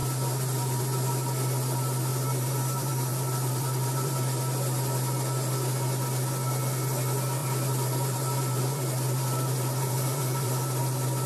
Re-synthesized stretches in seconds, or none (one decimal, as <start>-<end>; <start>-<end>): 0.0-0.8; 2.1-4.4; 7.4-10.8